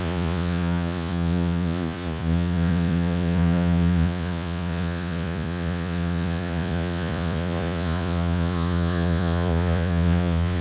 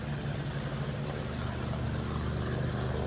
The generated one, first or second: first